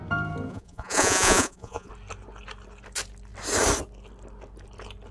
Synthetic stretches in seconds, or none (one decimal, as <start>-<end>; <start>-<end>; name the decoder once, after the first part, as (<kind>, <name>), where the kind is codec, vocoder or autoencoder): 0.5-1.9 (vocoder, Vocos)